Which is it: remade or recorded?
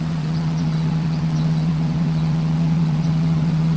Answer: remade